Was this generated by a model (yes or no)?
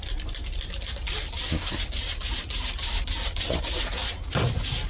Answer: no